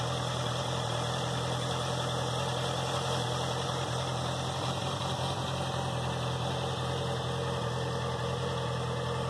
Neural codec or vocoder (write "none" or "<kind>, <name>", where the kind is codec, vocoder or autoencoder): none